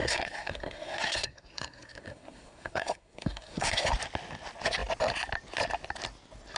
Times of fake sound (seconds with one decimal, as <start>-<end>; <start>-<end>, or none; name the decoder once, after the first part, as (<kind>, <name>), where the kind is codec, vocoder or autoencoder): 0.0-3.9 (codec, SNAC)